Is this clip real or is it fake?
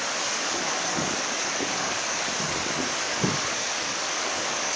fake